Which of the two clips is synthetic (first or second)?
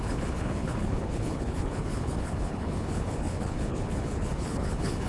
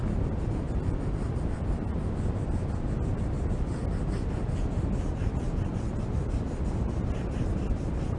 first